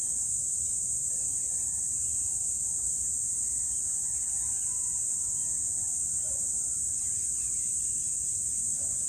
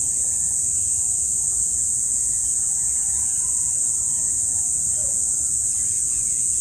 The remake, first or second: second